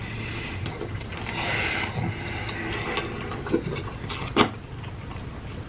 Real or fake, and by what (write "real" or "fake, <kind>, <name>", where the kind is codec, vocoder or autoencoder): real